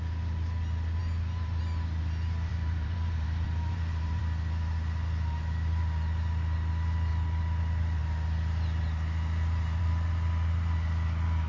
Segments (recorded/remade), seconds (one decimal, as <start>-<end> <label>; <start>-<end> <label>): 0.0-1.0 recorded; 1.0-1.6 remade; 1.6-2.5 recorded; 2.5-4.2 remade; 4.2-11.5 recorded